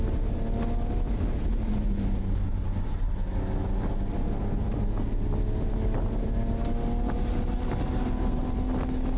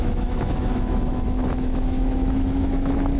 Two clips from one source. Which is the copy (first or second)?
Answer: second